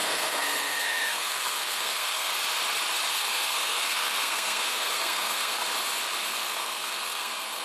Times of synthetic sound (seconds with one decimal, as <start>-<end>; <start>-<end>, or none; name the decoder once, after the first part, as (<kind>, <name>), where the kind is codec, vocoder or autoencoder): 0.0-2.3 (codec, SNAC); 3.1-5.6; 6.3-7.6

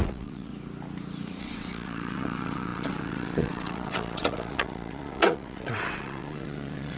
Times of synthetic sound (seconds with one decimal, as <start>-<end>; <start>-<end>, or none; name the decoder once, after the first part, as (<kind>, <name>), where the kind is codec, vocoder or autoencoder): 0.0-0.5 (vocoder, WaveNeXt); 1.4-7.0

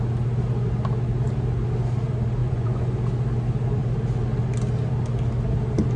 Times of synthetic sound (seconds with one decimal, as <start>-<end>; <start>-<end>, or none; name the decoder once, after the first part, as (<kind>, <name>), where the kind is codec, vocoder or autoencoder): 2.4-3.0 (vocoder, Vocos)

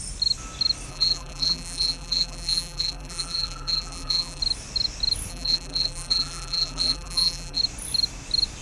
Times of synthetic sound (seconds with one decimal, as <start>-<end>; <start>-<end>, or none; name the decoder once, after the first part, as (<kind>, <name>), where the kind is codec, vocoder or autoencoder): 0.9-4.4 (vocoder, BigVGAN v2); 5.3-7.6

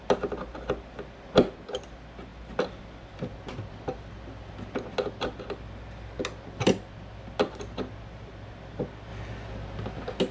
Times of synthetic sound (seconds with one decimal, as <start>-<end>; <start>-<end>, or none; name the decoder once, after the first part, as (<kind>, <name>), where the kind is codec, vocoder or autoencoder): none

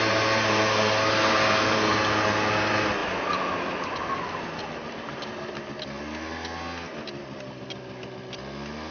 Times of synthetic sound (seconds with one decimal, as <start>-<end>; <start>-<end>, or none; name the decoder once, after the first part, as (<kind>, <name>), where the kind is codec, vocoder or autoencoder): none

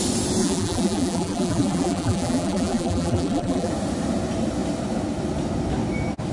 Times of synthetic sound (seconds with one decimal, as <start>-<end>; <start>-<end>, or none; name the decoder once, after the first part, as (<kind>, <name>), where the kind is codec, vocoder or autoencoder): 0.4-3.7 (vocoder, BigVGAN v2)

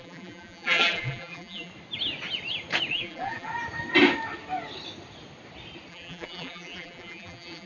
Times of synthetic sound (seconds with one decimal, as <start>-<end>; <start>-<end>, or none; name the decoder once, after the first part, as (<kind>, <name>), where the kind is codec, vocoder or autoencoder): 0.0-1.7 (vocoder, BigVGAN v2); 2.9-3.5; 5.9-7.7